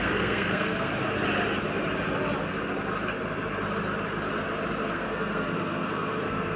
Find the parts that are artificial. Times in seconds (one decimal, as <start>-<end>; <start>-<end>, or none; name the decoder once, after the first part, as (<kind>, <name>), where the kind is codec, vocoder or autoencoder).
0.0-0.9 (codec, SNAC); 4.9-6.6